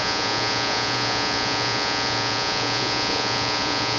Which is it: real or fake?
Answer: fake